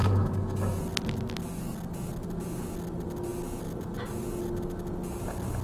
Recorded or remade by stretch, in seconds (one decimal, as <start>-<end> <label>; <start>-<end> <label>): 0.0-0.8 remade; 0.8-5.6 recorded